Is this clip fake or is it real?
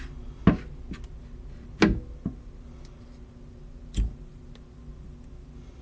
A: real